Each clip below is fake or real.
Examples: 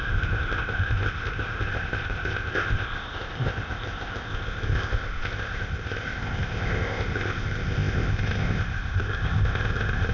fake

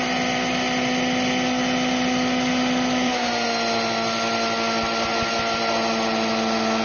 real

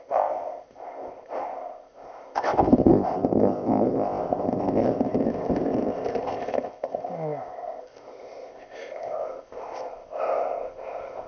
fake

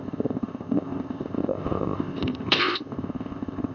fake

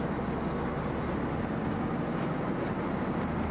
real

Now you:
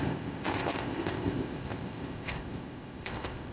fake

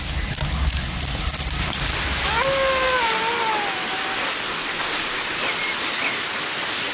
real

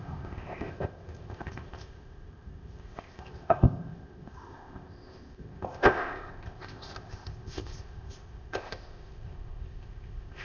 fake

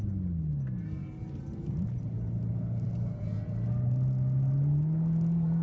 real